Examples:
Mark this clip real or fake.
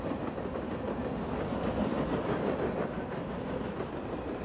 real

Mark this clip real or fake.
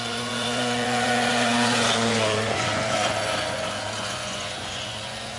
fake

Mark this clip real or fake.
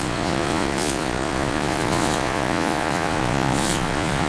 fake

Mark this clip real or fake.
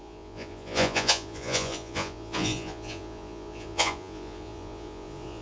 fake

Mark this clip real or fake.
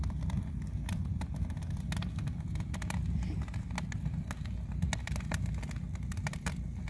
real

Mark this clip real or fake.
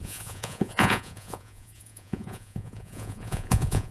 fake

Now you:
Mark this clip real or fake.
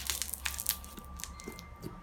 real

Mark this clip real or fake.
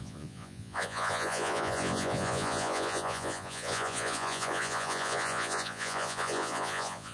fake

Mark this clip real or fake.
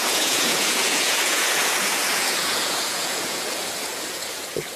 fake